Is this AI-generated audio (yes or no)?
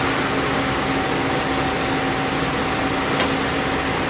no